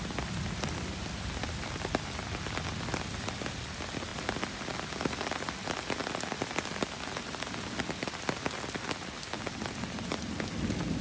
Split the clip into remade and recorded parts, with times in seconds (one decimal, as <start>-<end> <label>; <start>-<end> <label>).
0.0-11.0 recorded